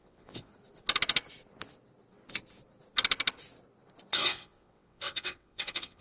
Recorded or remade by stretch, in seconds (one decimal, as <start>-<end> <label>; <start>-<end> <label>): 0.0-0.5 remade; 0.5-4.1 recorded; 4.1-6.0 remade